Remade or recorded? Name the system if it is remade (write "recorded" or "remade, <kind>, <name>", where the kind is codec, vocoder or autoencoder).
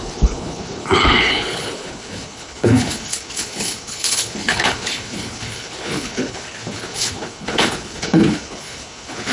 remade, codec, HILCodec